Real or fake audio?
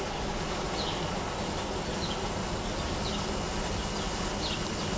real